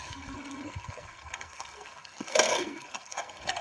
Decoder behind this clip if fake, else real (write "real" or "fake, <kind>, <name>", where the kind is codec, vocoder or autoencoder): fake, codec, SNAC